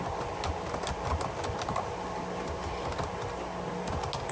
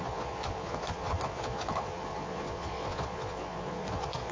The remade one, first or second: second